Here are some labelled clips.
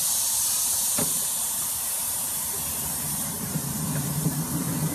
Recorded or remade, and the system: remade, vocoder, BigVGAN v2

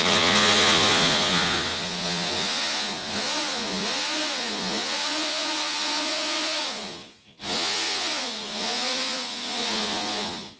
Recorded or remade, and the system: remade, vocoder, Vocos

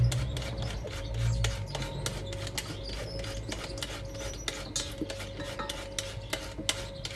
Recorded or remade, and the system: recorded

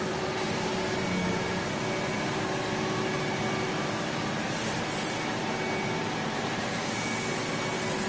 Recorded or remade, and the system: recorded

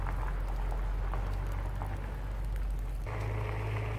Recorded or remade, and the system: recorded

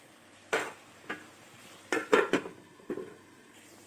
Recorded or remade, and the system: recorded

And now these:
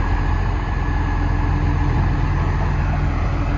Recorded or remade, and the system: recorded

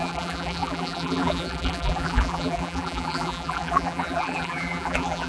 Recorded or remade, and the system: remade, vocoder, BigVGAN v2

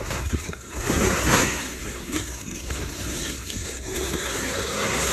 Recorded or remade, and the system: remade, codec, SNAC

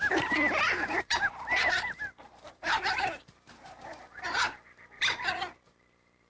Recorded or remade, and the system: remade, vocoder, BigVGAN v2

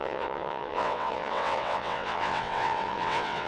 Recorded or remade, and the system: remade, vocoder, WaveNeXt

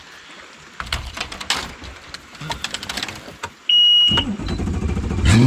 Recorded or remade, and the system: recorded